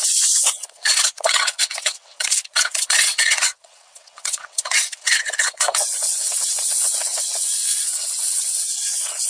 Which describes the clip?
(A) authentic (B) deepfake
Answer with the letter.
B